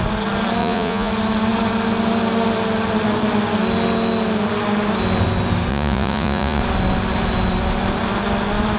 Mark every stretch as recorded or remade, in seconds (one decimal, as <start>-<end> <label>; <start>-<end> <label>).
0.0-0.6 recorded; 0.6-1.1 remade; 1.1-5.7 recorded; 5.7-6.6 remade; 6.6-8.8 recorded

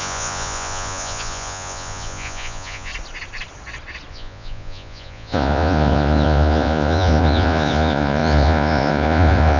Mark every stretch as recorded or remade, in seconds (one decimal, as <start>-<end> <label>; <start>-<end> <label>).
0.0-2.9 remade; 2.9-4.1 recorded; 4.1-9.6 remade

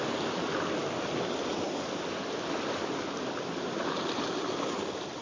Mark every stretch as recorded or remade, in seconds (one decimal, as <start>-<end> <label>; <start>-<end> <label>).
0.0-5.2 recorded

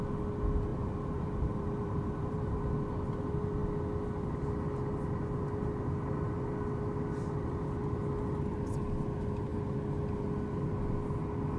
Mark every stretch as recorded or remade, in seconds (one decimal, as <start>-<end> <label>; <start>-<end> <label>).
0.0-0.7 recorded; 0.7-2.7 remade; 2.7-11.6 recorded

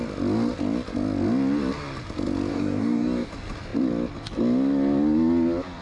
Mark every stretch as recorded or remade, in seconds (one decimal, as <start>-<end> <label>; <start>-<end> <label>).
0.0-2.5 recorded; 2.5-3.3 remade; 3.3-5.8 recorded

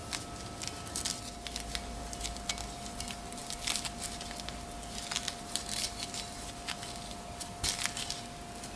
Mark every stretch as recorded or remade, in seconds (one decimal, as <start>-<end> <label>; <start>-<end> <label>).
0.0-8.8 recorded